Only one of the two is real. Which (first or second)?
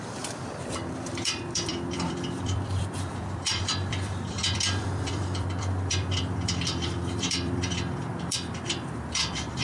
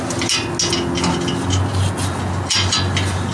second